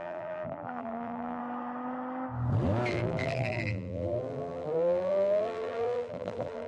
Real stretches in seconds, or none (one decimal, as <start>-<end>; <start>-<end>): 1.4-2.9